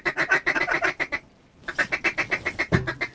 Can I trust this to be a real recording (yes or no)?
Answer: yes